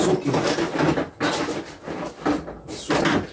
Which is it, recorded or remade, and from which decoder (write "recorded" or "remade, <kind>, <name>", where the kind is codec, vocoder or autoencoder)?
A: recorded